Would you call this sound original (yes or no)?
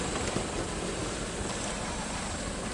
yes